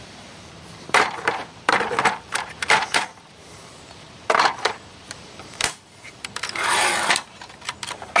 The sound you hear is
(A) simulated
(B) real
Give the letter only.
A